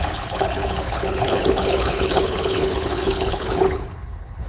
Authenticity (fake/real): fake